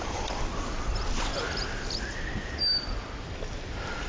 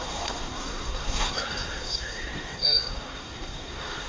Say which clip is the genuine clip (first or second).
first